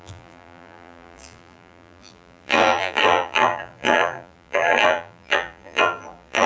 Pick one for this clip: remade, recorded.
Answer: remade